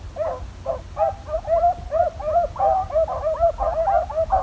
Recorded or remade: recorded